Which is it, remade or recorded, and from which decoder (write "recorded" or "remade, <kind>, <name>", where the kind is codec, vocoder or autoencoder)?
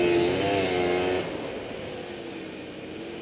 recorded